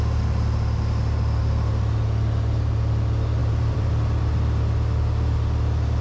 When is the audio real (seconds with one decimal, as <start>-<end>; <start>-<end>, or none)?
0.0-3.4; 3.9-6.0